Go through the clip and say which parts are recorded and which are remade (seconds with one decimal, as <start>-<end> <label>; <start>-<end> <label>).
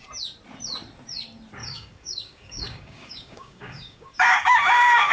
0.0-1.6 recorded; 1.6-5.1 remade